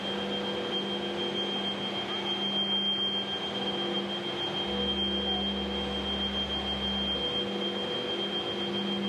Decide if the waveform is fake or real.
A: real